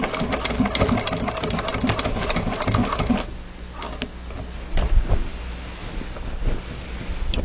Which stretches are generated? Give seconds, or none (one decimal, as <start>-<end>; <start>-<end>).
none